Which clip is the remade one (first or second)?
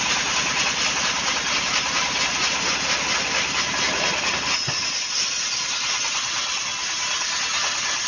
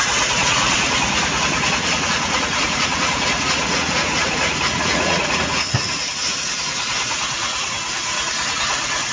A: second